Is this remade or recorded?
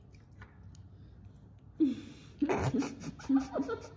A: recorded